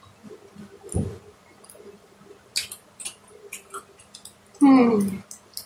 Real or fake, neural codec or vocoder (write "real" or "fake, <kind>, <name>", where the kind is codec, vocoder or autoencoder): real